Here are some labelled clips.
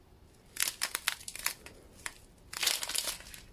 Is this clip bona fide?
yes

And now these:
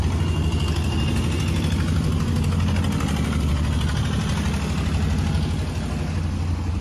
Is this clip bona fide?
yes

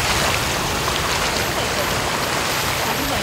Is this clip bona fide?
yes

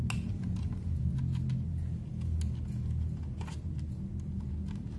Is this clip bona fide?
yes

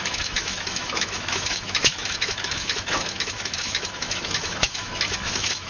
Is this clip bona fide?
no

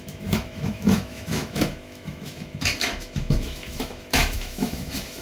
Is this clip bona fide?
no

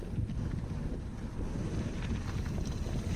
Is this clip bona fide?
yes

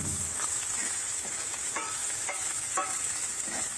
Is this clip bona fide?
no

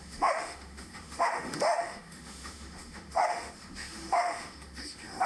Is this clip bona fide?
no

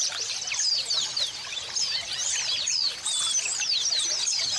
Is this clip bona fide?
yes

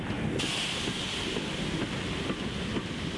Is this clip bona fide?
yes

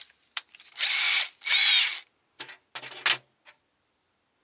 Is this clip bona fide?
yes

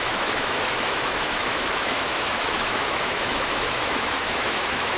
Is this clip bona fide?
no